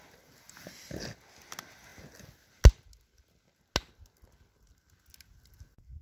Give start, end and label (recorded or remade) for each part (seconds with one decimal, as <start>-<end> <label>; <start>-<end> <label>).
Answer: 0.0-6.0 recorded